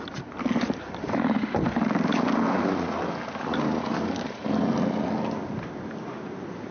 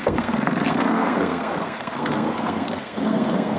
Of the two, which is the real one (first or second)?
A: first